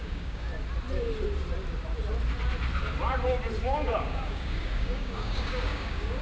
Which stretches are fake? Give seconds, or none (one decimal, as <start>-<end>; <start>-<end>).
0.0-0.5; 3.6-6.2

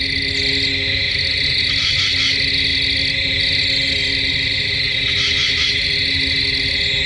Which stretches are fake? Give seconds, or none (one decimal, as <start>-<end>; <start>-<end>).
none